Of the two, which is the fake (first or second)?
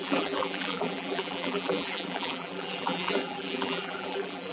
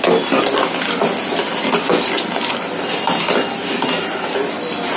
first